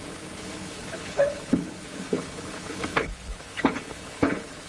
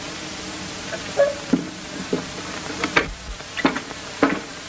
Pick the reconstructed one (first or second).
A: first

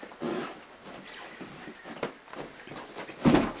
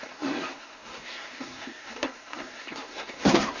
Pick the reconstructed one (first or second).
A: second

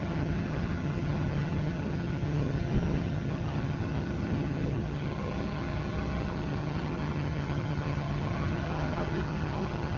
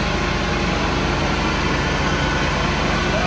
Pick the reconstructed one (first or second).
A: first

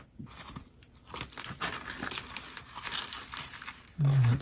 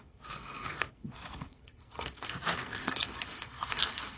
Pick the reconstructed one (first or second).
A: second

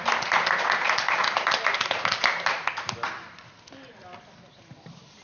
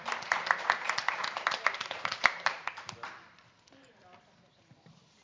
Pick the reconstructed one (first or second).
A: second